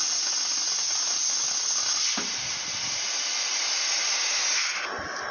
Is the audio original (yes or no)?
yes